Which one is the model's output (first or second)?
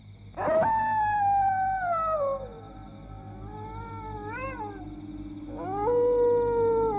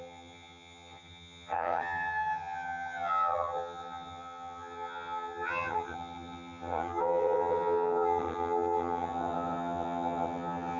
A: second